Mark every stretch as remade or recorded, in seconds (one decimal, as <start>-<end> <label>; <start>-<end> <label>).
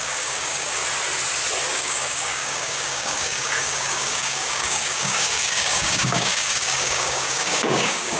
0.0-0.8 remade; 0.8-1.7 recorded; 1.7-8.2 remade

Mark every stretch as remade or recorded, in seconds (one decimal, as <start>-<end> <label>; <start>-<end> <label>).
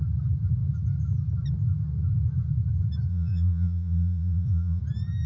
0.0-3.1 recorded; 3.1-4.8 remade; 4.8-5.3 recorded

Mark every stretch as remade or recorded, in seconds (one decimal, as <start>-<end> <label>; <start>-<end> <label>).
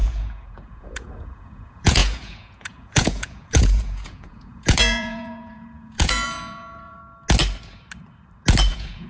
0.0-7.0 remade; 7.0-8.7 recorded; 8.7-9.1 remade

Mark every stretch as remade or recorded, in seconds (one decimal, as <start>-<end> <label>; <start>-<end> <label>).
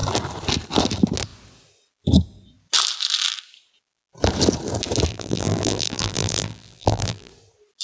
0.0-5.1 recorded; 5.1-7.3 remade; 7.3-7.8 recorded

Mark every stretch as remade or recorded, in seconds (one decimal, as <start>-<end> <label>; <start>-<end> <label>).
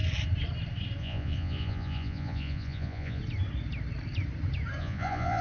0.0-1.0 recorded; 1.0-3.2 remade; 3.2-4.8 recorded; 4.8-5.4 remade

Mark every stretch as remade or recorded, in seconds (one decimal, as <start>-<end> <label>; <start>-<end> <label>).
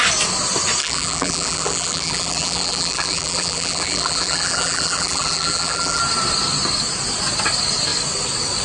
0.0-0.8 recorded; 0.8-6.0 remade; 6.0-8.6 recorded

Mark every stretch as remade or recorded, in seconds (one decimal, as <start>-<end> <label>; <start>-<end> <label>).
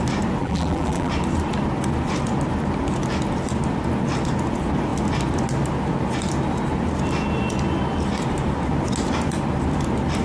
0.0-0.4 recorded; 0.4-1.1 remade; 1.1-10.2 recorded